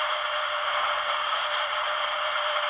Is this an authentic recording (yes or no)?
no